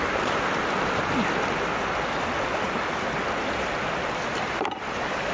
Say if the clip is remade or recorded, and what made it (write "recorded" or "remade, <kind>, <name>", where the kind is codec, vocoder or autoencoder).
remade, vocoder, BigVGAN v2